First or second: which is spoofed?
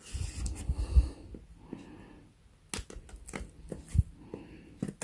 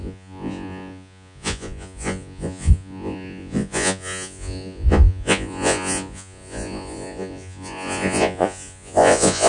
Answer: second